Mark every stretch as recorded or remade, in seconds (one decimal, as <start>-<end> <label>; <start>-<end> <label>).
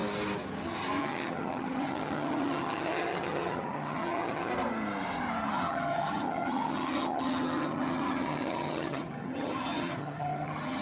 0.0-1.0 recorded; 1.0-4.5 remade; 4.5-5.5 recorded; 5.5-10.8 remade